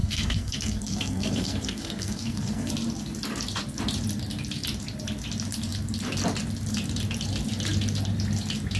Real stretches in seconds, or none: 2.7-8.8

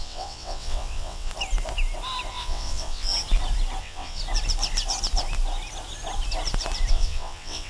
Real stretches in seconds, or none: 1.3-2.3; 3.1-3.8; 4.2-6.9

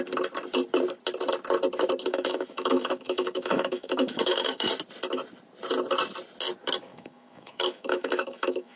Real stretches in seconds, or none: 0.0-2.1; 4.7-6.9

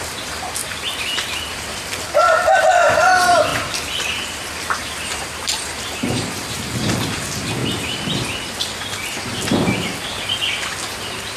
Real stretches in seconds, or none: 7.6-10.9